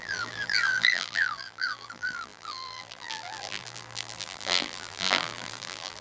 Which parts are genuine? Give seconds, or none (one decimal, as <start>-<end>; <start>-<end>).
none